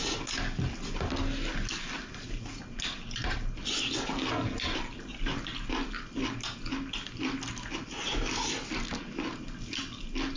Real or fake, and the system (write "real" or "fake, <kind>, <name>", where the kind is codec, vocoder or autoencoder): real